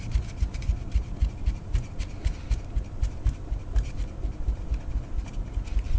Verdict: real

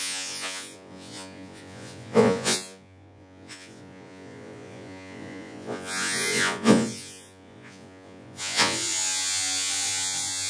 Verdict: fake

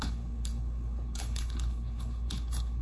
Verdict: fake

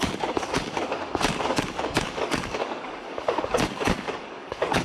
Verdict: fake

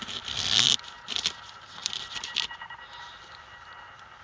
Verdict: real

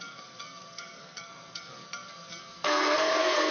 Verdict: fake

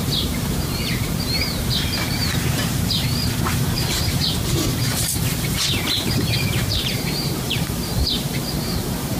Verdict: fake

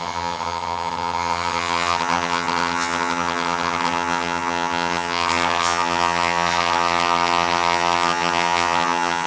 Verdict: fake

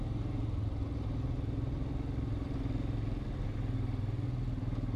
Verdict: real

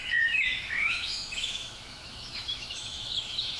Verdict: fake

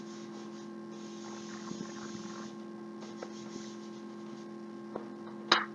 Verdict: real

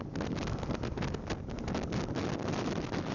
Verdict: real